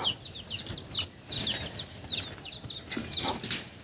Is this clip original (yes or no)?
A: yes